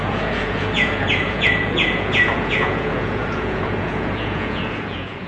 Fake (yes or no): yes